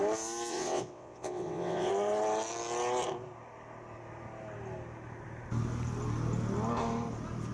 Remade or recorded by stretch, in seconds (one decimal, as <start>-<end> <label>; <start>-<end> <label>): 0.0-0.5 recorded; 0.5-1.9 remade; 1.9-7.5 recorded